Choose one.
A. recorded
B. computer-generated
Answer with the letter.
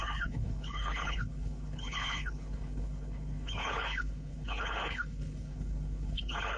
B